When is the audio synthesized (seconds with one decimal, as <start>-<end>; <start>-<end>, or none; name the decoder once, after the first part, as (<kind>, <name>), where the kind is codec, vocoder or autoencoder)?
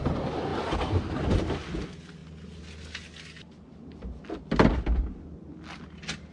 none